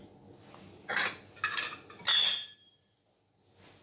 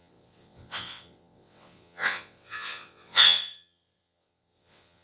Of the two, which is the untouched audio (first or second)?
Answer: first